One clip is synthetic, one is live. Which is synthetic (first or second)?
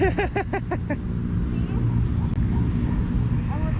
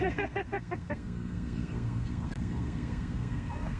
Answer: second